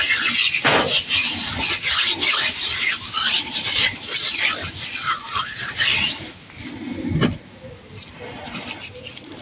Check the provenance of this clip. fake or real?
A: real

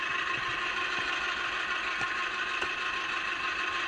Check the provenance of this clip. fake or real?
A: real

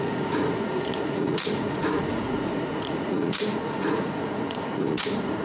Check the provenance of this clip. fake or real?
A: fake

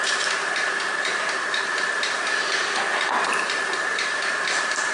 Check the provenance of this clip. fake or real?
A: real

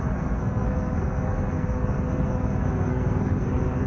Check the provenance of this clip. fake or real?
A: fake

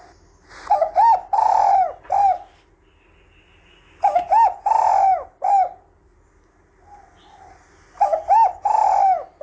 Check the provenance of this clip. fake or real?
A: real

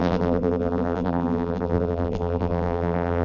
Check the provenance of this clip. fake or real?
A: fake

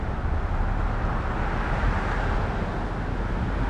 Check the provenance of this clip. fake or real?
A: real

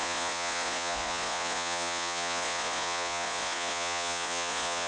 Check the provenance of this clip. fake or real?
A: fake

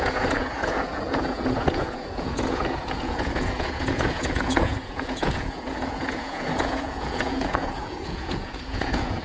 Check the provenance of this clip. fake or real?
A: fake